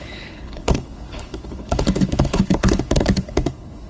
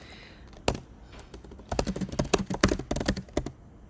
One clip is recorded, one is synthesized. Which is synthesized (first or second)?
first